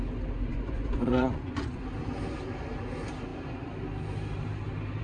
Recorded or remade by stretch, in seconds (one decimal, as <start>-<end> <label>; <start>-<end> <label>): 0.0-0.5 recorded; 0.5-1.8 remade; 1.8-5.0 recorded